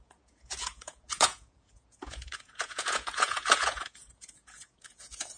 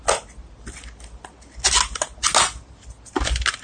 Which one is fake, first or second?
first